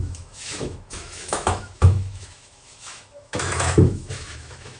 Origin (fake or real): fake